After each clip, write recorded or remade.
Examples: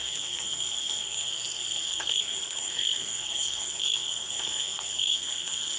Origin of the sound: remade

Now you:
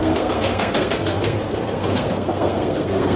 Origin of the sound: remade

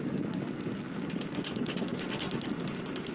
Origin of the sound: recorded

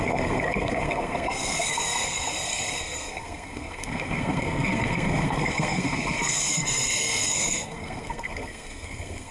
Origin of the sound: remade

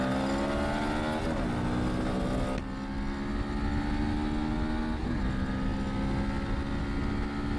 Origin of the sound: recorded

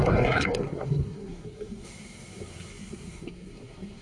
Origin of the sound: remade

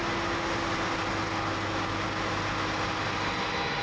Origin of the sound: recorded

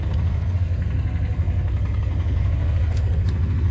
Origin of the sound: remade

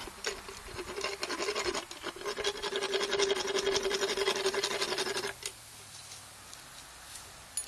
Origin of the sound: recorded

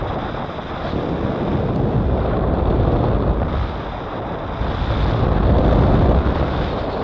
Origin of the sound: recorded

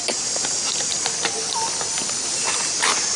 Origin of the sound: recorded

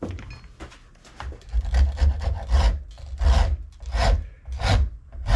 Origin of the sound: recorded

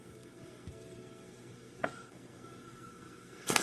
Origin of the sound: remade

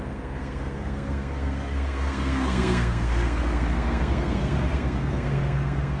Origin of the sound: remade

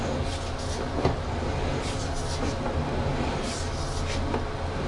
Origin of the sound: recorded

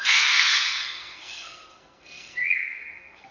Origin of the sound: remade